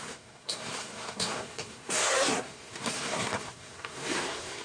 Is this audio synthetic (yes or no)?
yes